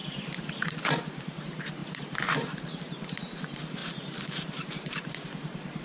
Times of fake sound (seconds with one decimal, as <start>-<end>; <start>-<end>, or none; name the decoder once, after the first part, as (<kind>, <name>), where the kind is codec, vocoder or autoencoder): 0.6-5.8 (vocoder, BigVGAN v2)